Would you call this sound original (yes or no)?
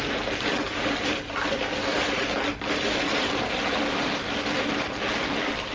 yes